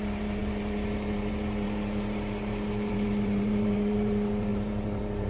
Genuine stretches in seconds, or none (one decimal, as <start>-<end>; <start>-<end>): none